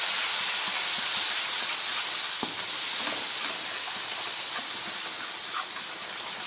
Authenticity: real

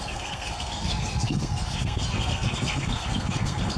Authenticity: fake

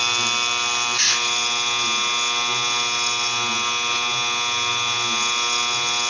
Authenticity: real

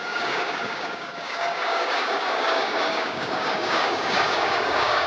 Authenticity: fake